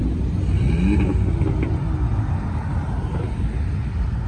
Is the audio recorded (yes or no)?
yes